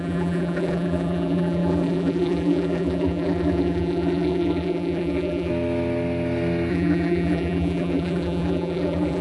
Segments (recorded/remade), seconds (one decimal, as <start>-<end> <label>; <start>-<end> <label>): 0.0-5.5 remade; 5.5-6.7 recorded; 6.7-9.2 remade